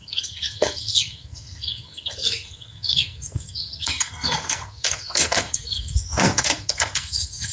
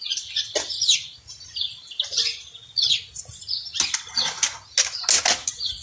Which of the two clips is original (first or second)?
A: second